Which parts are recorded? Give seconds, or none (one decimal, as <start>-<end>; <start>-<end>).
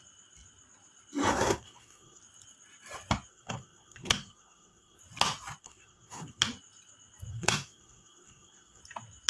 0.0-1.3; 2.2-3.3; 5.0-5.6; 6.4-7.3; 8.8-9.3